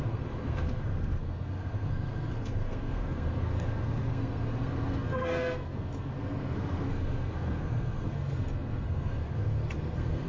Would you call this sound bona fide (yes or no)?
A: no